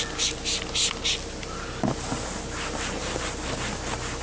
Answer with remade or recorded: recorded